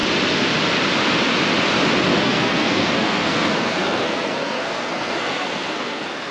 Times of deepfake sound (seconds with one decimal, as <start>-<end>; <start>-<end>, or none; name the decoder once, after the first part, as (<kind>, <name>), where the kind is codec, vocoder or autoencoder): 2.1-6.3 (codec, SNAC)

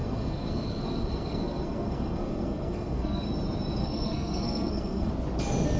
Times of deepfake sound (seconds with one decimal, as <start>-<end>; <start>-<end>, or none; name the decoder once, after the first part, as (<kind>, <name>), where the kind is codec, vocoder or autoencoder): 0.0-3.2 (codec, SNAC); 3.8-5.1